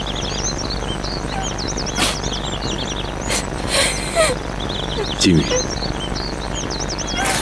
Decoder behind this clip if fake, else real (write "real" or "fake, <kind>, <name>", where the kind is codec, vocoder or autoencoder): real